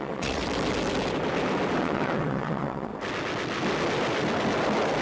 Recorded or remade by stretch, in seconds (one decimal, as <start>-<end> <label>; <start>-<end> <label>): 0.0-0.4 remade; 0.4-1.8 recorded; 1.8-2.9 remade; 2.9-5.0 recorded